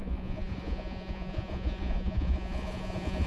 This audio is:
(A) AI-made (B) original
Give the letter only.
A